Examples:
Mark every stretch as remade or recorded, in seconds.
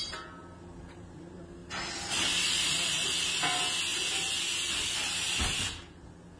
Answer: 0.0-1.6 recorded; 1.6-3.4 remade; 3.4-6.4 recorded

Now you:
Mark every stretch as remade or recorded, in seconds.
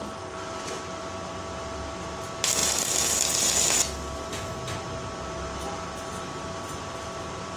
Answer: 0.0-7.6 recorded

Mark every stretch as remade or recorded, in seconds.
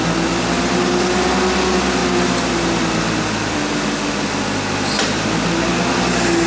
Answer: 0.0-6.5 recorded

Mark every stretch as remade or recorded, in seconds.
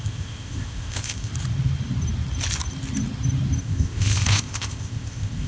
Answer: 0.0-1.3 remade; 1.3-3.6 recorded; 3.6-5.5 remade